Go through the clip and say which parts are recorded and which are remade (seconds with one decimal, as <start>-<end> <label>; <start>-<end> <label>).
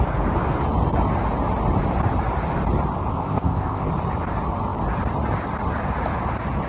0.0-3.1 recorded; 3.1-3.9 remade; 3.9-6.7 recorded